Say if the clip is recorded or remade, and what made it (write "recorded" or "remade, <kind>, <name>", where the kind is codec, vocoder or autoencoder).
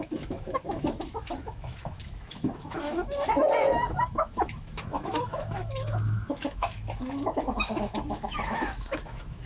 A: remade, autoencoder, DAC-VAE